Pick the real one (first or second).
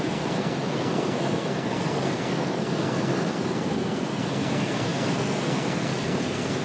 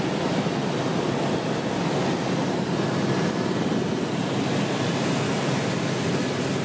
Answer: second